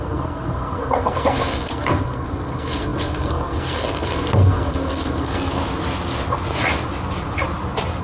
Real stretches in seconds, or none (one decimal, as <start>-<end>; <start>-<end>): 5.6-8.0